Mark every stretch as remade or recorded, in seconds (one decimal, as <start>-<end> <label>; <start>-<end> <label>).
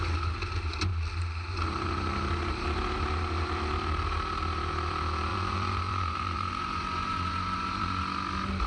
0.0-5.3 recorded; 5.3-8.0 remade; 8.0-8.7 recorded